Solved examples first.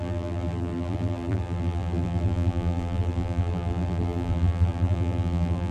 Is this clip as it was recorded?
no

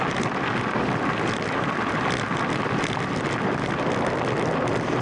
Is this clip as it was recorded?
yes